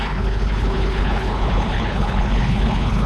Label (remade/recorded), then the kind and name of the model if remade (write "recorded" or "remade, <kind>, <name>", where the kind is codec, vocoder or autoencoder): remade, codec, HILCodec